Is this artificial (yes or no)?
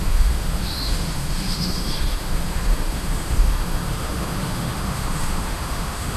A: yes